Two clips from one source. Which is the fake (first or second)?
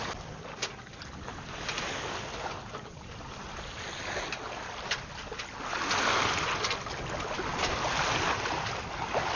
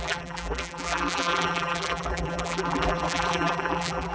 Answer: second